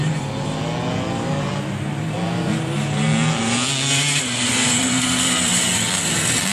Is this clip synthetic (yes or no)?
no